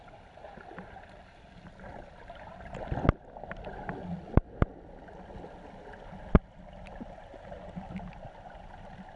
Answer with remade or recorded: recorded